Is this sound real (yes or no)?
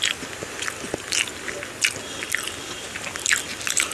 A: yes